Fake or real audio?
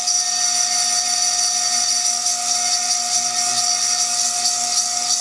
real